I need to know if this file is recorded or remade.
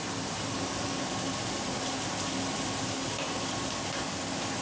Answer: recorded